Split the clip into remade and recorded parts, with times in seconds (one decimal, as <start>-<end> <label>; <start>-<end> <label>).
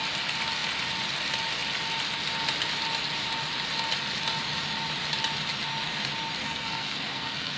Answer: 0.0-6.4 recorded; 6.4-7.6 remade